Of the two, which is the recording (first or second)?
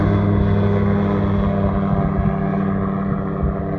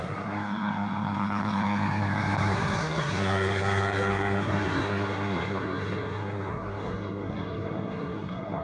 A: first